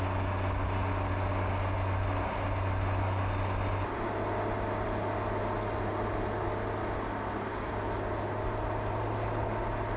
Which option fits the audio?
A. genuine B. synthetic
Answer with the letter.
A